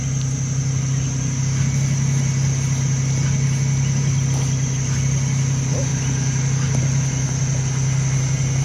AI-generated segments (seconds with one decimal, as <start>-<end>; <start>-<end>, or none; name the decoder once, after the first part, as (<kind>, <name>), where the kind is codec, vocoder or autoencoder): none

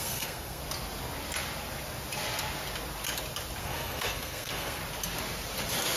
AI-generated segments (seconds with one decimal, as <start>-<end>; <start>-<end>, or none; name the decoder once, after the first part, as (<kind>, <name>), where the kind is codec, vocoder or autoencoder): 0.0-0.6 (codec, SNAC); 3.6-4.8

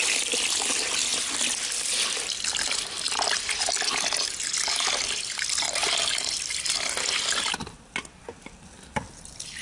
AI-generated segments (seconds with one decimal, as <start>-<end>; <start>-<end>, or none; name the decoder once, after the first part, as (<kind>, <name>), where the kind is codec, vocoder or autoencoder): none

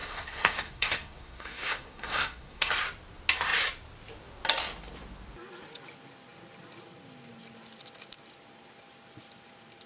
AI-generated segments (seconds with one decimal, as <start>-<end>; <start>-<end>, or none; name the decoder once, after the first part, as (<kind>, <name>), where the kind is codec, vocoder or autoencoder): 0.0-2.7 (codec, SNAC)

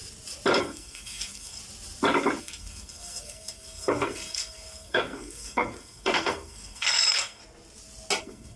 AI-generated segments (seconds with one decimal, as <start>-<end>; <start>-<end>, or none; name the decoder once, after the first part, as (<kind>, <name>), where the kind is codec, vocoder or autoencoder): 0.6-1.6 (codec, SNAC); 2.4-7.4; 8.2-8.6